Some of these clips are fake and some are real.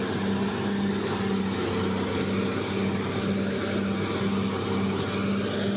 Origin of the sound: real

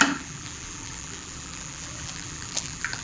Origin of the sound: fake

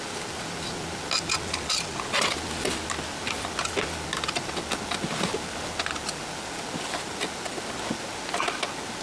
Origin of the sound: real